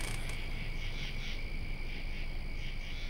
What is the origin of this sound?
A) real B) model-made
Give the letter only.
A